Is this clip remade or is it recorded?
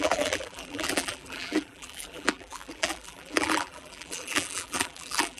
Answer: remade